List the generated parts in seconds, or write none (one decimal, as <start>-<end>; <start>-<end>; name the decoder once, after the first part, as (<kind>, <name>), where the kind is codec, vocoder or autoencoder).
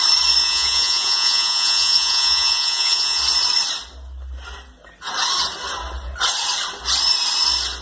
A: 0.4-3.2 (vocoder, Vocos)